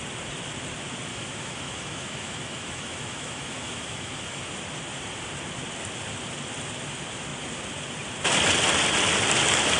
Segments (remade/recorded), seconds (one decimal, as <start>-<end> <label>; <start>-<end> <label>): 0.0-1.1 recorded; 1.1-4.5 remade; 4.5-9.8 recorded